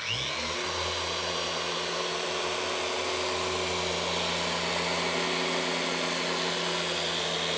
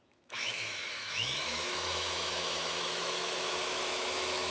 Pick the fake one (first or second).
second